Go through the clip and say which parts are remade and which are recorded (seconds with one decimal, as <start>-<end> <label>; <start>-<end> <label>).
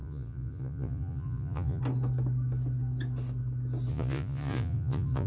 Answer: 0.0-1.8 remade; 1.8-3.9 recorded; 3.9-5.3 remade